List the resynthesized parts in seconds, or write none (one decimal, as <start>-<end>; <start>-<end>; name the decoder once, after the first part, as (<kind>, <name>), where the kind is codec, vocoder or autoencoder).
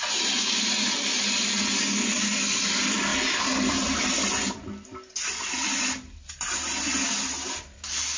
none